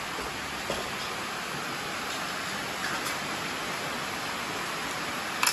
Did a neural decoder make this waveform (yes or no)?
no